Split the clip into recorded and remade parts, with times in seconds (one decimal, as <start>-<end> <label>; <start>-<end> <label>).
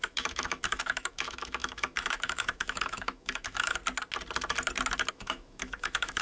0.0-3.8 remade; 3.8-5.1 recorded; 5.1-6.2 remade